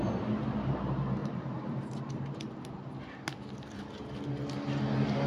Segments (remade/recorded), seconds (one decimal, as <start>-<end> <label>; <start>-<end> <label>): 0.0-1.2 recorded; 1.2-2.4 remade; 2.4-5.3 recorded